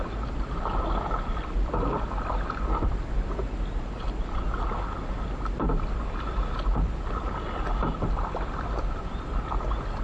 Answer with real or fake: real